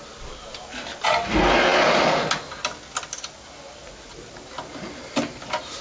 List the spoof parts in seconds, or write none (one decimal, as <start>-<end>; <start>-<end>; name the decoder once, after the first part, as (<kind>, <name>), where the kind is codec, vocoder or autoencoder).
none